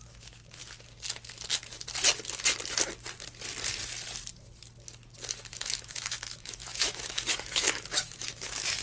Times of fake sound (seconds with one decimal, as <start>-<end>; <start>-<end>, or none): 0.0-0.6; 5.5-8.8